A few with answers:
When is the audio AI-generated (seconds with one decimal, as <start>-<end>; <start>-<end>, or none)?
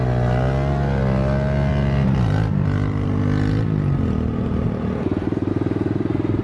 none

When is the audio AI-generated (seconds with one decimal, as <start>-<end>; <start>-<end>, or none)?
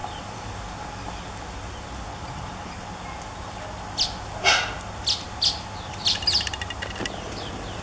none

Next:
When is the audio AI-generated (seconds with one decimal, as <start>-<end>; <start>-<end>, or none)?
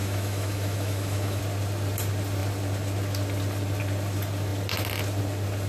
0.0-1.4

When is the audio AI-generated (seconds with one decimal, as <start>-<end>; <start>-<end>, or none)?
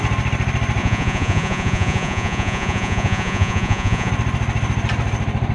0.8-4.1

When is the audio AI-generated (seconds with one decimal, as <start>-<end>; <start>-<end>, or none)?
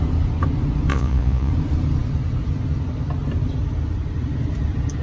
0.9-1.5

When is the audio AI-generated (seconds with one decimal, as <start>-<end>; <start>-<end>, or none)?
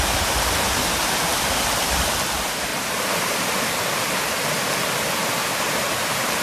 2.7-3.6; 5.4-6.4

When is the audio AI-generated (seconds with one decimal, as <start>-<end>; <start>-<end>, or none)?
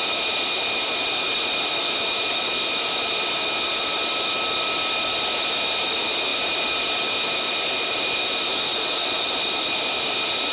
none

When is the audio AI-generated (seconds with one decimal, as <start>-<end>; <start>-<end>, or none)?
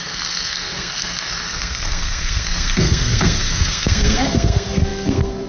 0.0-5.5